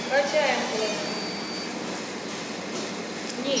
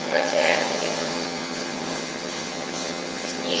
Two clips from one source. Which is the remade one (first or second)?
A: second